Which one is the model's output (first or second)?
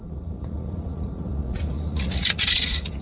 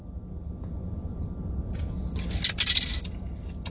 first